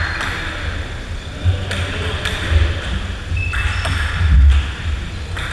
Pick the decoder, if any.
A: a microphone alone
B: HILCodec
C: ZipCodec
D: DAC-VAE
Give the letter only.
A